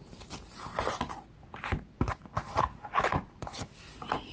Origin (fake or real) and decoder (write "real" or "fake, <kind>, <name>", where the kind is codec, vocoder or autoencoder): real